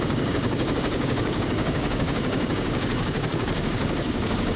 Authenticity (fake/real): fake